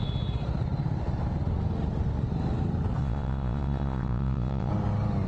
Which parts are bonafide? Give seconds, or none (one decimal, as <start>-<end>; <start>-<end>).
0.0-3.0; 4.7-5.3